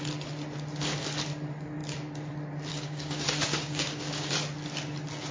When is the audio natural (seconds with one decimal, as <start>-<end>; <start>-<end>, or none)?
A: 0.0-2.7; 4.3-5.3